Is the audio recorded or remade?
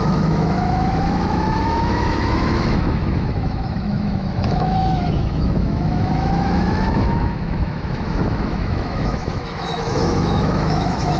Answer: remade